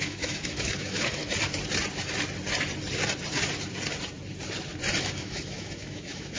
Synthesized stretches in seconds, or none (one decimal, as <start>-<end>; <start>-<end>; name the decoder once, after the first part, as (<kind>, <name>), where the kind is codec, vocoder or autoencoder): 0.0-1.2 (autoencoder, DAC-VAE); 5.0-6.4